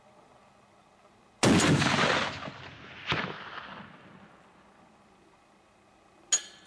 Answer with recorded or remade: recorded